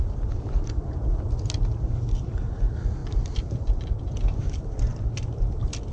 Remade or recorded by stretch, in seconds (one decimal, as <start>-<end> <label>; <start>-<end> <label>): 0.0-4.9 recorded; 4.9-5.5 remade; 5.5-5.9 recorded